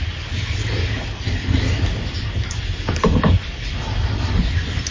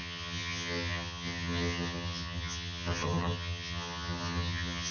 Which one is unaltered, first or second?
first